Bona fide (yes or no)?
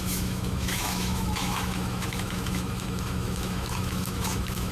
no